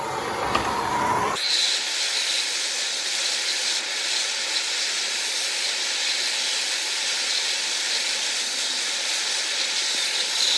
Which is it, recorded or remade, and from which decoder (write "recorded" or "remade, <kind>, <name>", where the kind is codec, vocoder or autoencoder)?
recorded